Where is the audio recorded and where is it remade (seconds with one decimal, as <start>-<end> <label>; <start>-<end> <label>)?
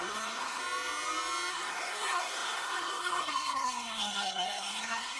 0.0-0.6 remade; 0.6-1.5 recorded; 1.5-5.2 remade